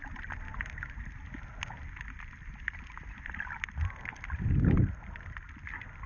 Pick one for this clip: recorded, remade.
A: recorded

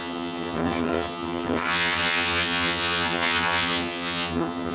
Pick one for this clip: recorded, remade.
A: remade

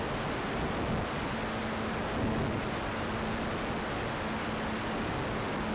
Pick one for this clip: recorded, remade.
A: recorded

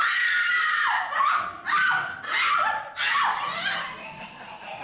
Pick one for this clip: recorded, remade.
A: recorded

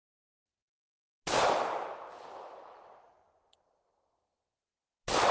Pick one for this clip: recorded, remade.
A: recorded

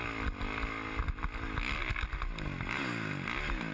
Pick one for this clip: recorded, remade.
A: recorded